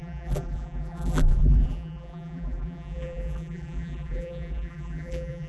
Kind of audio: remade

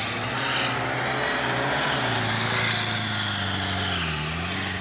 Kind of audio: recorded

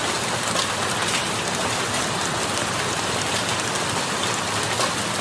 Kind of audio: recorded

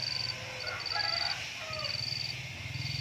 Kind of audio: recorded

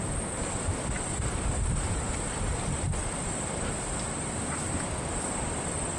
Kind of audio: recorded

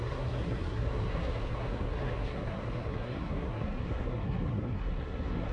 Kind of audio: remade